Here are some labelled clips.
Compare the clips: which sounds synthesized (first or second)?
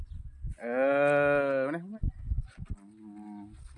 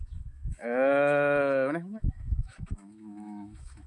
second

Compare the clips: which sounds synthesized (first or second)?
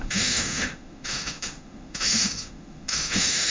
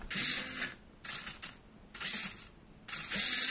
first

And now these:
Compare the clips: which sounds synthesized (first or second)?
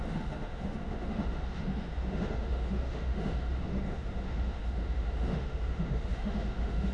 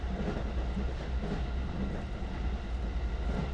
first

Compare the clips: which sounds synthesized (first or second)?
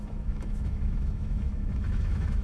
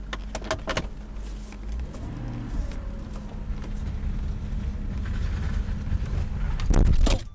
first